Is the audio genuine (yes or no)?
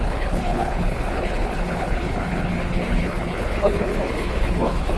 no